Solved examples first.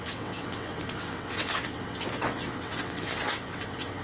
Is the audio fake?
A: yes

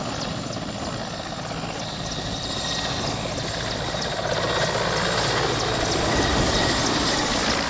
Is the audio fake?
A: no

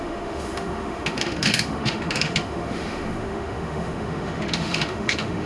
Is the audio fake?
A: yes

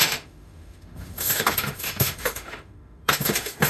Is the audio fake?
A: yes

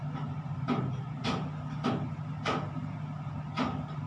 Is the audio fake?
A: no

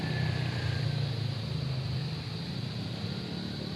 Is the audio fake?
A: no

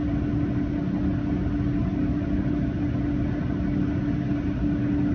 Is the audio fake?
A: no